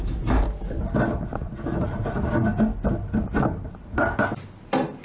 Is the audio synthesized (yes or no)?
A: no